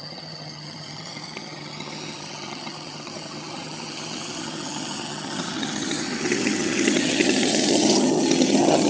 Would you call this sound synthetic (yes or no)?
yes